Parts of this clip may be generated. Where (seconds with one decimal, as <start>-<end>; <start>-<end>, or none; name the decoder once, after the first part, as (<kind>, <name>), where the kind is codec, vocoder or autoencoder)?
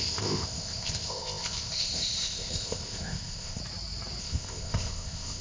0.0-3.6 (codec, ZipCodec); 4.2-5.4